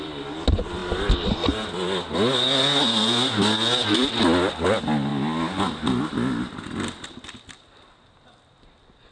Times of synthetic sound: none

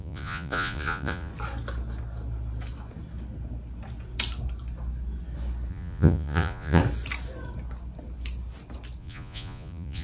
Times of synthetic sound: 0.0-1.3 (vocoder, Vocos); 5.7-6.8; 9.0-10.0

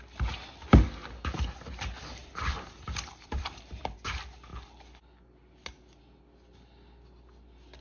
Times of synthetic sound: 2.2-3.8 (vocoder, BigVGAN v2)

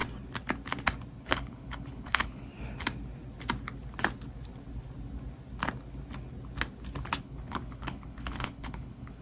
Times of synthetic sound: 1.2-2.5 (codec, HILCodec); 7.2-9.2

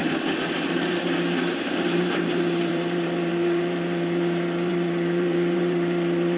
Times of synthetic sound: 0.6-6.4 (vocoder, BigVGAN v2)

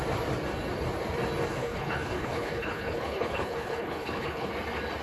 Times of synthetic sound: 1.5-4.5 (codec, HILCodec)